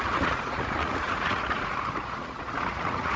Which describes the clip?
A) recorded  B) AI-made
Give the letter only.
B